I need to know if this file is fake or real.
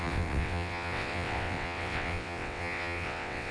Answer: fake